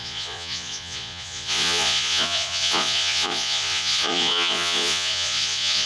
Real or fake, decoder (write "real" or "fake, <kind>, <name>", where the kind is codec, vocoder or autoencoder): fake, vocoder, Vocos